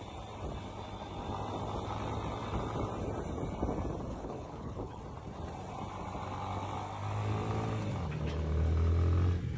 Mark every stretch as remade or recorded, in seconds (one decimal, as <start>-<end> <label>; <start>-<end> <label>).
0.0-4.1 recorded; 4.1-5.0 remade; 5.0-9.6 recorded